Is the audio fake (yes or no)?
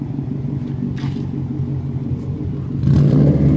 no